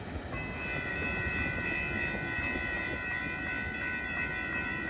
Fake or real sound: real